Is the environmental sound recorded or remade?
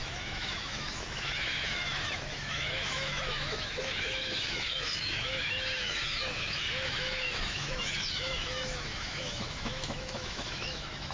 remade